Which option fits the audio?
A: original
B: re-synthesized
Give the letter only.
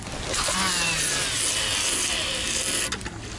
A